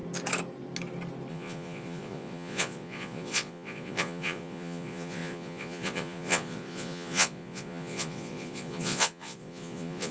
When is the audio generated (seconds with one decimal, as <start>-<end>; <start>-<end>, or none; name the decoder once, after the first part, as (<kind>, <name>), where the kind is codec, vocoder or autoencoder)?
1.3-10.1 (vocoder, Vocos)

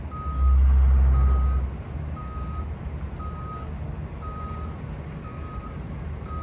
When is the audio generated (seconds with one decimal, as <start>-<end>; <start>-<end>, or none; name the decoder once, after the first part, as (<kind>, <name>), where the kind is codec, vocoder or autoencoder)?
none

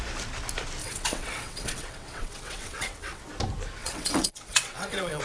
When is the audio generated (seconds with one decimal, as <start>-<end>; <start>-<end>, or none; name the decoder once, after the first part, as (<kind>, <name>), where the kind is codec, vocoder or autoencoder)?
0.8-3.2 (vocoder, WaveNeXt); 3.8-5.2

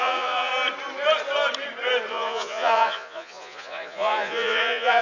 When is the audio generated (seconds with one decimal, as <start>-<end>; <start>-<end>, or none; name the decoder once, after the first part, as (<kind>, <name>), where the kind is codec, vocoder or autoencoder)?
0.0-0.5 (vocoder, Vocos); 2.1-5.0